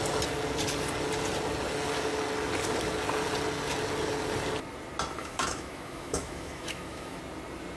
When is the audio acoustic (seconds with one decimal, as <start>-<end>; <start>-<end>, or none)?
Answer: 0.0-5.2; 7.2-7.8